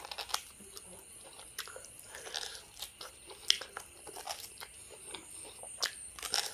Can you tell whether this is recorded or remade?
recorded